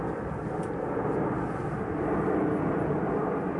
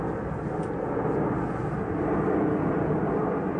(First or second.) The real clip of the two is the second